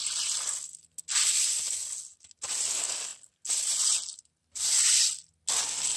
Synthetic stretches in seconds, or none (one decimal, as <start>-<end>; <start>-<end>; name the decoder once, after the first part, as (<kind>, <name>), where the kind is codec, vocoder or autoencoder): none